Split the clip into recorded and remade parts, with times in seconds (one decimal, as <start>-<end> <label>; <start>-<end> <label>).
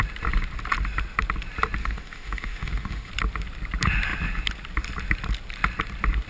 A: 0.0-1.8 recorded; 1.8-3.1 remade; 3.1-6.3 recorded